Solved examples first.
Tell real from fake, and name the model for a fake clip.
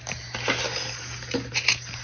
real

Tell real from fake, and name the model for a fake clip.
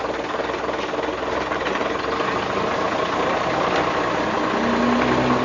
real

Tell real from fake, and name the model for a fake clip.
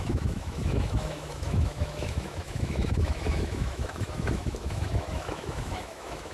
fake, autoencoder, DAC-VAE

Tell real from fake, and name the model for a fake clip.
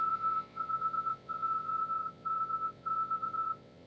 fake, vocoder, WaveNeXt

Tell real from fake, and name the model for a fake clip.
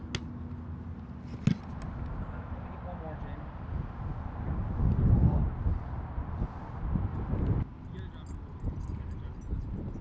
real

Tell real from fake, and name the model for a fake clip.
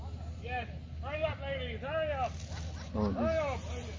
real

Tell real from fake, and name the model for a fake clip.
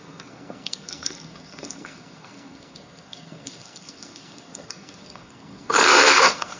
fake, codec, SNAC